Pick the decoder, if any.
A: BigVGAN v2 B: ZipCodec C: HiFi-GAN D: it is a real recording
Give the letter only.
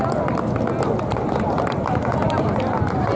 D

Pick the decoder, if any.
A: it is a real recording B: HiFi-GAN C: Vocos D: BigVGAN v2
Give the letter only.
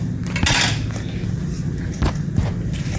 A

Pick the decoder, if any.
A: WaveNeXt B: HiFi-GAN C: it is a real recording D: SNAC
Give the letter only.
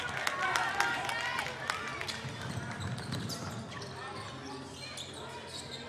C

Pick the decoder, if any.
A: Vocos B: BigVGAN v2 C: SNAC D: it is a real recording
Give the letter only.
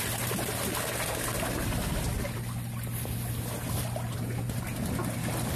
D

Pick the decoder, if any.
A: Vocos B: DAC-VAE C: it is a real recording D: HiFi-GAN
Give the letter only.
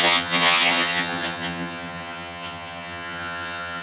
D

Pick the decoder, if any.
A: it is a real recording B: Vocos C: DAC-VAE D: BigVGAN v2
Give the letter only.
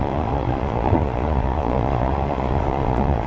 B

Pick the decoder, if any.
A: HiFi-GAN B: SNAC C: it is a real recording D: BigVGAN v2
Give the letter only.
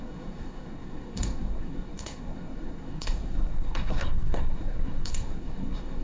B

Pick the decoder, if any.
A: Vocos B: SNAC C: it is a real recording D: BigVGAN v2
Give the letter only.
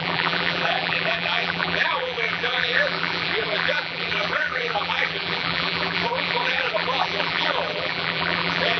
D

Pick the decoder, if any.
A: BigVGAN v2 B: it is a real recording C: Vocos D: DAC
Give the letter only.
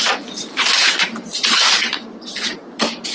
A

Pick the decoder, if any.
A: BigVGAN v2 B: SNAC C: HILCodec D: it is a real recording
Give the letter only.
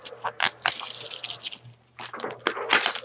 D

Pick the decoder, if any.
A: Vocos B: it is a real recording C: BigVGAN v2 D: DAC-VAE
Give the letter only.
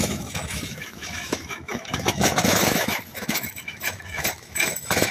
D